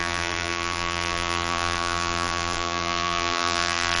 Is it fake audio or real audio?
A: fake